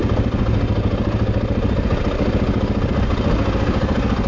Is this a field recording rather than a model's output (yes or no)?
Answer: yes